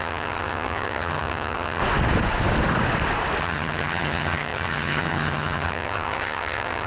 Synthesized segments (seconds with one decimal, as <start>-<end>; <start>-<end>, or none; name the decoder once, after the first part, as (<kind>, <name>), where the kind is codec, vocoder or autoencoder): 0.0-1.8 (vocoder, HiFi-GAN); 3.4-6.9